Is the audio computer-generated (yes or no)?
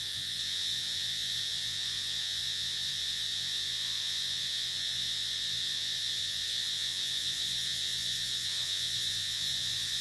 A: yes